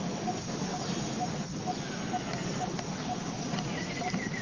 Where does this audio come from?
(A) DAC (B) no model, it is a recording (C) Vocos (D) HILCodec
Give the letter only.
B